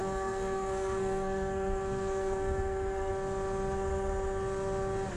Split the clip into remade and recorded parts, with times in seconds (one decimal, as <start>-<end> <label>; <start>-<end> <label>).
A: 0.0-3.1 remade; 3.1-5.2 recorded